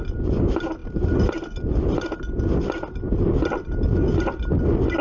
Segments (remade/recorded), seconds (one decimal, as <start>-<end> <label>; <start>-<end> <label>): 0.0-5.0 recorded